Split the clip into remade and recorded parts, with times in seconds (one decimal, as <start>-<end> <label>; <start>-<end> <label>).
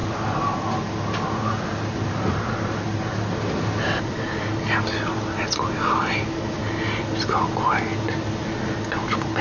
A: 0.0-9.4 recorded